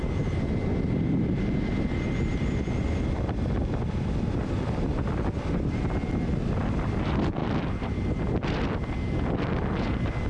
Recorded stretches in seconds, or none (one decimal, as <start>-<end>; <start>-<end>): 0.0-10.3